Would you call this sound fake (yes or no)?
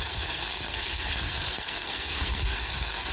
yes